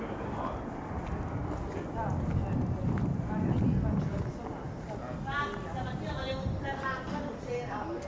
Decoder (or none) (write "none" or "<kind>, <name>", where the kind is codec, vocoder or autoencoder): none